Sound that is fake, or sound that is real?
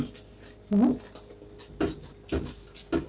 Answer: real